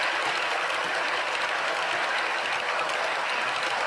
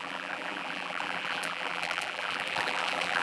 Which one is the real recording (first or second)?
first